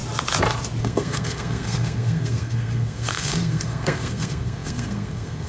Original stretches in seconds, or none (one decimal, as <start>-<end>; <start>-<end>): 0.0-0.8